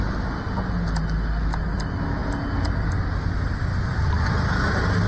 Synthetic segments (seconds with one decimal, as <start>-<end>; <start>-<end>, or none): none